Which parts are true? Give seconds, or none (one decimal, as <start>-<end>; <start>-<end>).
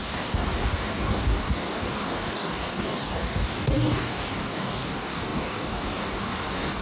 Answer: none